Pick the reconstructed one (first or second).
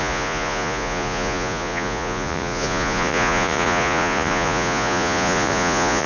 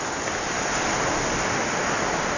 first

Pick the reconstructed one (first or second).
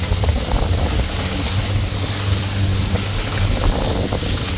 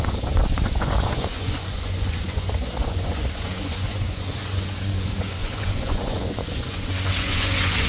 second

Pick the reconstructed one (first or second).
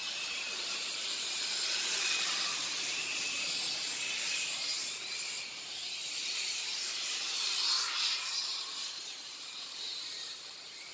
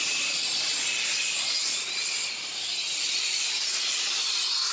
first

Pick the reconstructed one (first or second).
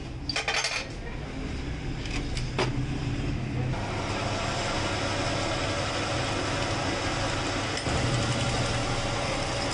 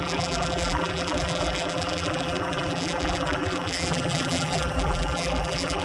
second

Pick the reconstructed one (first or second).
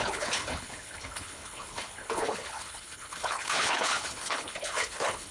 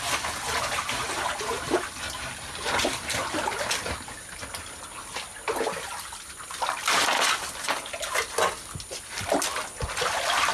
first